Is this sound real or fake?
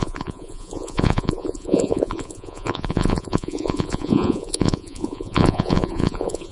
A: fake